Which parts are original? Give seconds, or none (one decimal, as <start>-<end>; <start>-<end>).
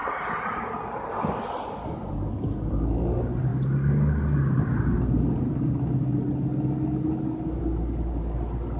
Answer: 0.0-8.8